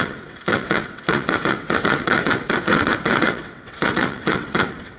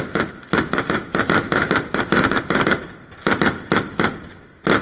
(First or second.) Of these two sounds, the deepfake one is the first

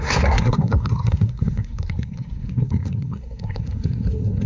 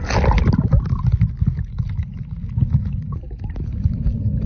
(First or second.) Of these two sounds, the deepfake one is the first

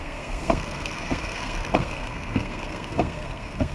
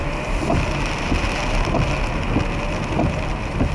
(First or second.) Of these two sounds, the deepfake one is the first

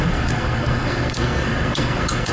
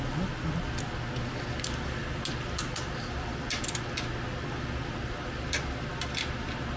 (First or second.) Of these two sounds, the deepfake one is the first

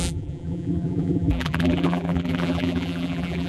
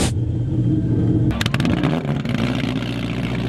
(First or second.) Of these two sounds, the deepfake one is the first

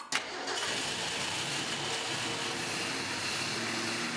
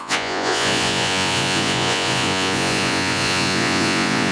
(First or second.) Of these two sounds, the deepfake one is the second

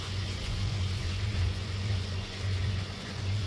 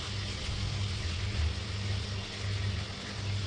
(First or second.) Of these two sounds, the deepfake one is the first